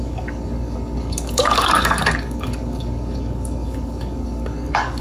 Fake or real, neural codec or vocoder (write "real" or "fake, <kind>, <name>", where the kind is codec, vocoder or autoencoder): fake, codec, DAC